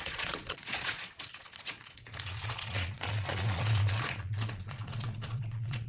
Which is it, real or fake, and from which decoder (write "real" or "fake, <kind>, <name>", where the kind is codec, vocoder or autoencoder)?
fake, vocoder, Vocos